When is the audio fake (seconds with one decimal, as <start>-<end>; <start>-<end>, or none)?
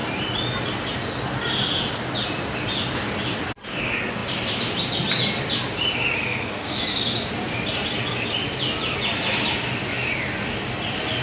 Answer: 6.2-6.8